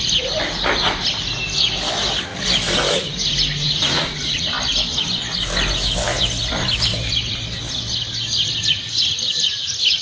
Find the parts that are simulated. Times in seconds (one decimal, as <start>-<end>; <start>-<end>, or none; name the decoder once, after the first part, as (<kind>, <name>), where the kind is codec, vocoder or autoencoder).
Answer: none